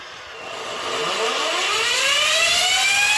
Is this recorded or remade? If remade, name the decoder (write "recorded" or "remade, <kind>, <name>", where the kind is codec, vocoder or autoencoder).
recorded